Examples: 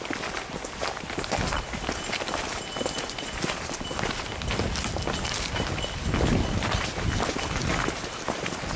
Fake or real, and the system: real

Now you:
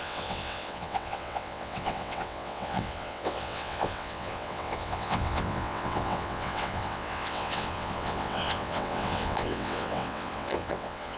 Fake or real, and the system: fake, vocoder, WaveNeXt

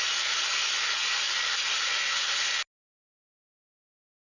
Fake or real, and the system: real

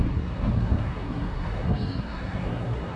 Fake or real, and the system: fake, codec, SNAC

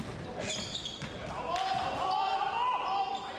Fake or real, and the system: real